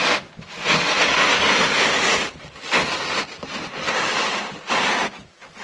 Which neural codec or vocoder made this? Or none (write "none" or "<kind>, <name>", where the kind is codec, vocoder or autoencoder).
none